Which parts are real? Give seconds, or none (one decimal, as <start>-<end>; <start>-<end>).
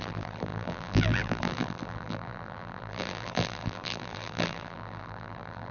none